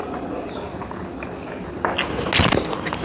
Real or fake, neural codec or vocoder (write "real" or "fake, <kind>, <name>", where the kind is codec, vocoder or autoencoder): real